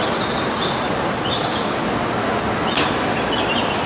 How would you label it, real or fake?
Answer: real